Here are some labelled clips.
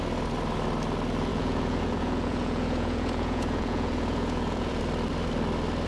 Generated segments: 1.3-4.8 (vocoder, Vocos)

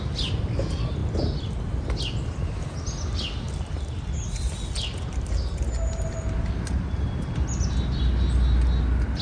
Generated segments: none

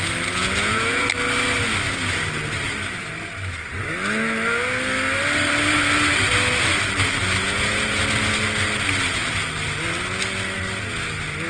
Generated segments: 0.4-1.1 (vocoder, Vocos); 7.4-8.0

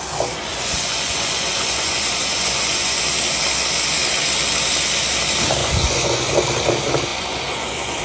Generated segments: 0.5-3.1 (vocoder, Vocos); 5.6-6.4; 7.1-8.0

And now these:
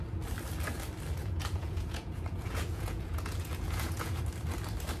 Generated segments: 1.2-4.2 (vocoder, Vocos)

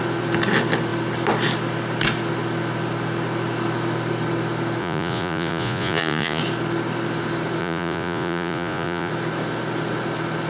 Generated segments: 4.8-6.4 (vocoder, Vocos); 7.6-9.1

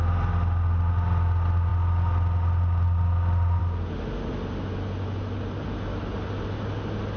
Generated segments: none